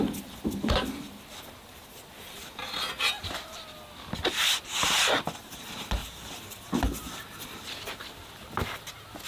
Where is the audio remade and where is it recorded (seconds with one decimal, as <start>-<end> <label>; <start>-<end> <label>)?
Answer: 0.0-6.0 recorded; 6.0-6.8 remade; 6.8-9.3 recorded